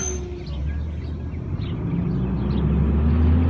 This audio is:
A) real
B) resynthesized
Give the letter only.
A